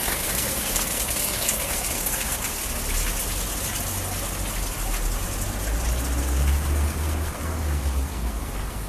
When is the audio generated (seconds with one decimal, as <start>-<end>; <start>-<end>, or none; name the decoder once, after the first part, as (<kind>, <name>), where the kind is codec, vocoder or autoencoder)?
0.0-2.6 (codec, SNAC); 6.2-8.9